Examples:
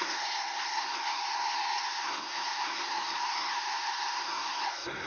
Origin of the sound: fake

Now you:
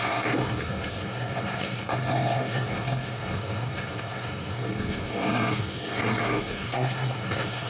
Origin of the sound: fake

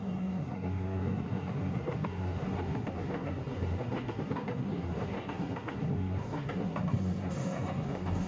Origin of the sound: fake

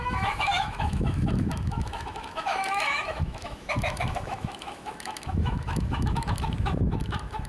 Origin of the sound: fake